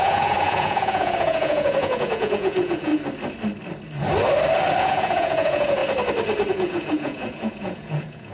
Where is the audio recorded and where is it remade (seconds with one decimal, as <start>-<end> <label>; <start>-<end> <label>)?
0.0-2.9 remade; 2.9-4.8 recorded; 4.8-5.8 remade; 5.8-6.5 recorded; 6.5-8.3 remade